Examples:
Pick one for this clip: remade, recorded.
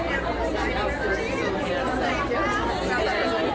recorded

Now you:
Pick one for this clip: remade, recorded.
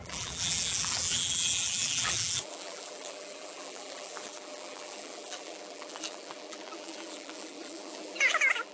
remade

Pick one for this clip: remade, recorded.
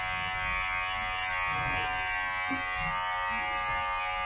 recorded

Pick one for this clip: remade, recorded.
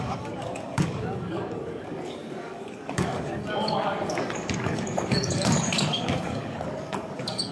remade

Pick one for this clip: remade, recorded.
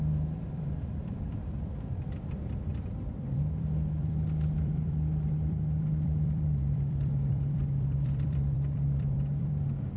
remade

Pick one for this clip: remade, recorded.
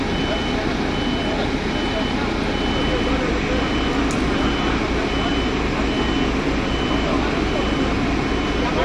recorded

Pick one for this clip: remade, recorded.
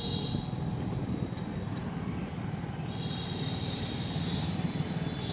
recorded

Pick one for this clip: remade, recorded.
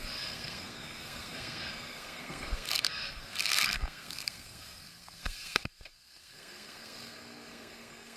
remade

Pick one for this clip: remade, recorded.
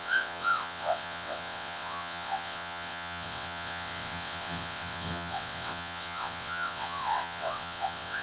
remade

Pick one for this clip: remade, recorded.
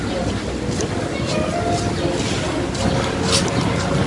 recorded